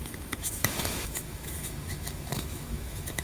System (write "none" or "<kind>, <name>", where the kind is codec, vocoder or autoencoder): autoencoder, DAC-VAE